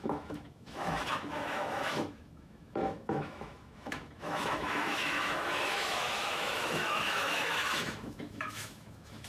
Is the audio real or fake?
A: fake